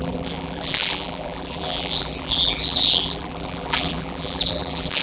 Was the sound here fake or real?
fake